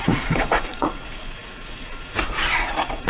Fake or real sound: fake